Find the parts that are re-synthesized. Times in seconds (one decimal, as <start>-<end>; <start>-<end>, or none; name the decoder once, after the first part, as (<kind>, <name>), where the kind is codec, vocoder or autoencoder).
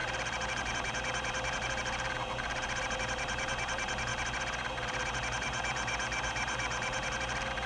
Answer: 0.0-4.1 (vocoder, BigVGAN v2); 4.7-7.7